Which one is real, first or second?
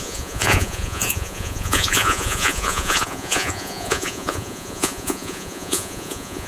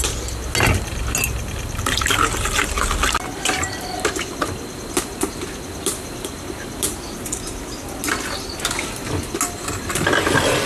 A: second